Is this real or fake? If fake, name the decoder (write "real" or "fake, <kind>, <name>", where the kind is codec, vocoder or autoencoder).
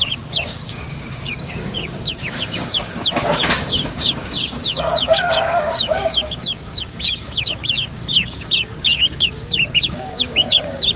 fake, codec, DAC